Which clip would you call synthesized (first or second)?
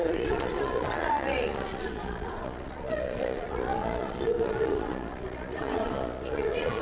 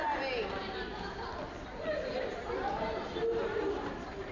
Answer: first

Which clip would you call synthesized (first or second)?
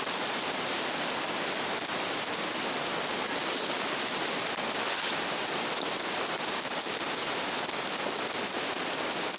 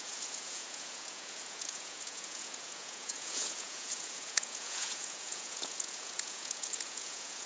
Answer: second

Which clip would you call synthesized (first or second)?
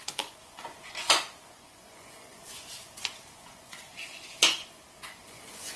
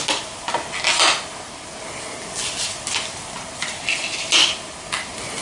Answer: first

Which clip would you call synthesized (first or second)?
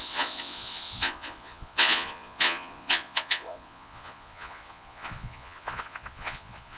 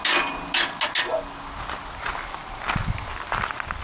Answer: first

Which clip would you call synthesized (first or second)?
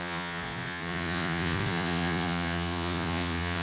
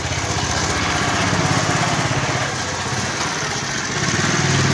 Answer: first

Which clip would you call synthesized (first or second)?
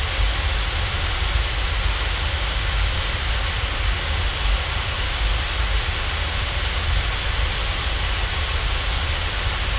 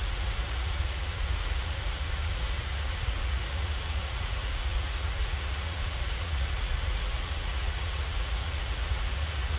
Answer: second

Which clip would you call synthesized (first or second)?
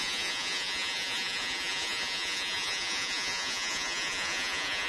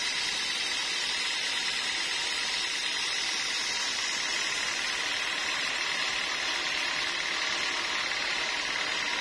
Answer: first